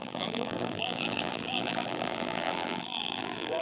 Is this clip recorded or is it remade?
remade